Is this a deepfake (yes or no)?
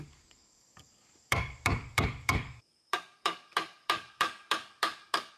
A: yes